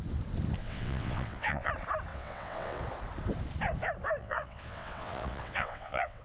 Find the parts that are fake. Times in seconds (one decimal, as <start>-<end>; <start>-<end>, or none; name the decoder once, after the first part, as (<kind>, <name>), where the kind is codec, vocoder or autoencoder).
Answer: 0.6-1.7 (vocoder, WaveNeXt); 2.1-2.8; 4.2-6.2